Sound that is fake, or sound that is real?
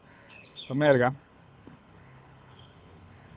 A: fake